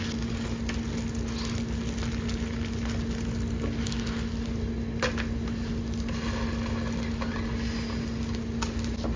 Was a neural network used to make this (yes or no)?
no